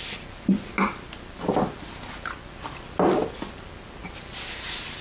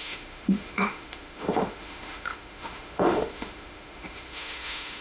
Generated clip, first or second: second